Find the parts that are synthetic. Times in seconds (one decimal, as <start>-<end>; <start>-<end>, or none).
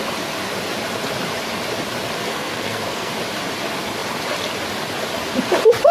2.3-3.1